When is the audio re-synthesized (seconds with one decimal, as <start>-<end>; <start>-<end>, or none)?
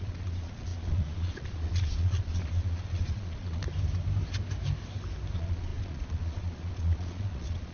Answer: 0.0-3.6; 5.3-7.7